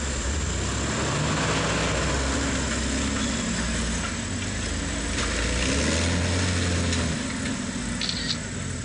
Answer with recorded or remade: recorded